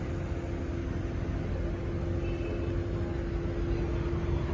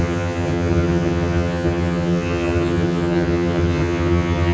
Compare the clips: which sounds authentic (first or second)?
first